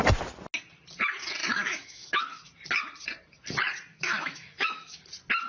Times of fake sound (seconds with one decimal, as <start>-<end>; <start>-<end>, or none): 1.4-2.2; 3.9-5.0

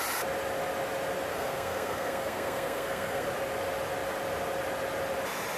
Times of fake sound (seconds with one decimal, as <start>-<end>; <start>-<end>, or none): 1.3-3.3

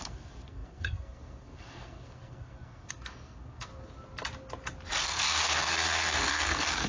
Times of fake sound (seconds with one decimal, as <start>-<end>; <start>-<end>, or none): 0.0-3.7; 5.0-6.9

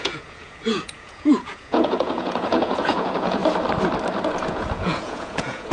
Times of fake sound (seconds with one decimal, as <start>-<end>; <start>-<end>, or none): 0.0-3.4; 4.5-5.7

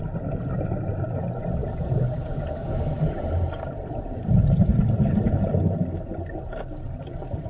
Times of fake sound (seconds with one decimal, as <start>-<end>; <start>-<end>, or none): 1.6-4.8